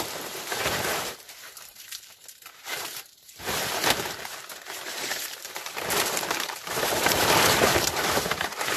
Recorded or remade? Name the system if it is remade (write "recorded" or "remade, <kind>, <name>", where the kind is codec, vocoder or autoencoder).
remade, vocoder, BigVGAN v2